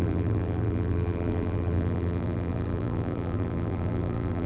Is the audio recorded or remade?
remade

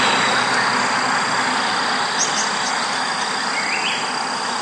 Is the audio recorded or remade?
recorded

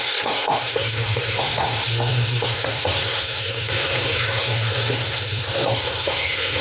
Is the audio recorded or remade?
remade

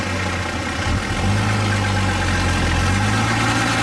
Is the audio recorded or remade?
recorded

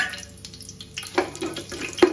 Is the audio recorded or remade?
recorded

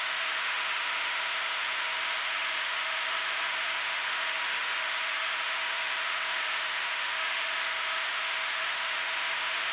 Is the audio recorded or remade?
remade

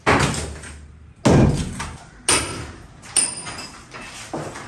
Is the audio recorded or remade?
recorded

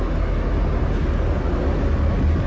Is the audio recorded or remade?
recorded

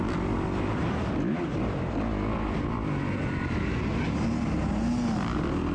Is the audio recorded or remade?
recorded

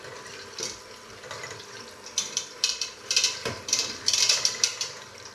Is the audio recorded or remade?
remade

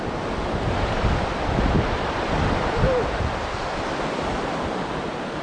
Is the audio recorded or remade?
recorded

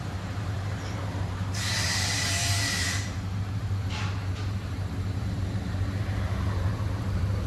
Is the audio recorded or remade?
remade